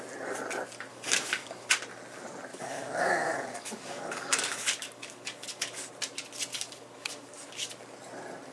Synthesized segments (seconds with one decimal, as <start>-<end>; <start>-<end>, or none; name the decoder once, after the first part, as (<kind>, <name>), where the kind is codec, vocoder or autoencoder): 0.9-1.7 (codec, DAC); 2.5-5.9; 6.5-7.7